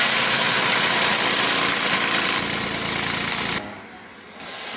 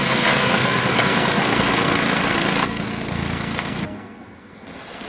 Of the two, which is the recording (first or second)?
first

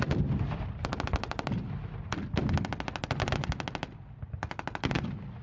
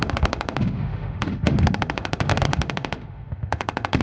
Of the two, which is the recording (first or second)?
first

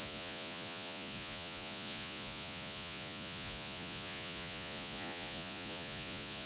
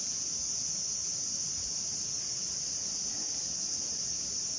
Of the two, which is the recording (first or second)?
second